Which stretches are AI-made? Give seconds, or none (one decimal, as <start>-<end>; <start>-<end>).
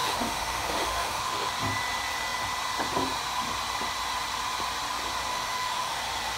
0.0-1.5; 5.3-6.0